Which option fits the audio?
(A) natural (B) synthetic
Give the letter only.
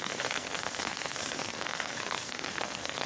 B